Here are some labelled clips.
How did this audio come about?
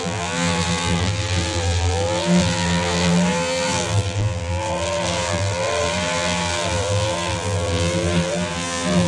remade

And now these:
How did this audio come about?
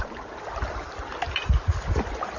recorded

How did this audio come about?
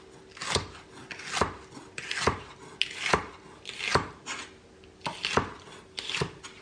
recorded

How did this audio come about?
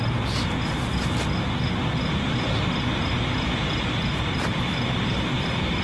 recorded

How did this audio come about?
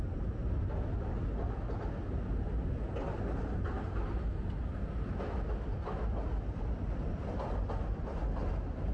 recorded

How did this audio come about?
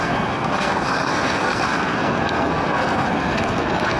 remade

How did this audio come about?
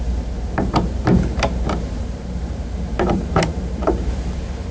remade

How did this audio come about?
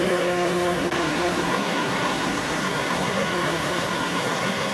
remade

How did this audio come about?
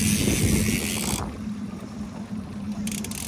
recorded